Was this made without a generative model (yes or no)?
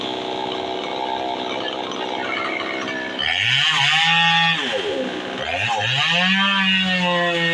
yes